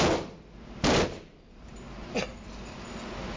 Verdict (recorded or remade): recorded